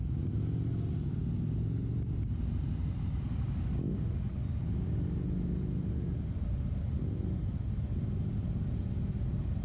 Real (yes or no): yes